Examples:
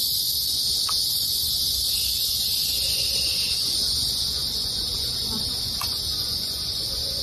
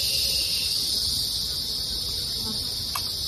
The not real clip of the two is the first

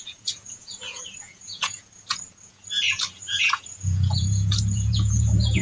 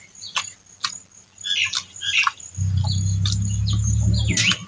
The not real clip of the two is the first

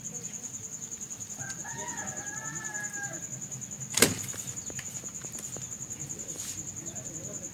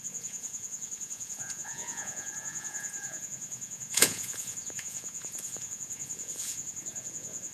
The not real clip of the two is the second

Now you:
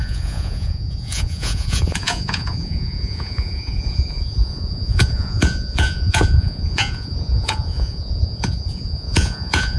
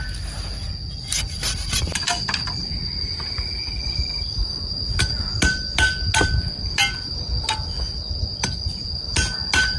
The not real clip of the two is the first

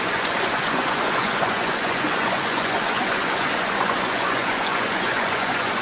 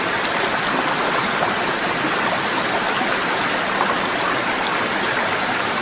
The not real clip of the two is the first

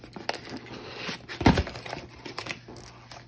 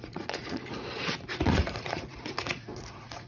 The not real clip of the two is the second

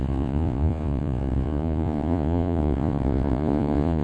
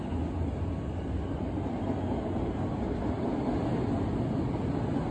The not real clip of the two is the first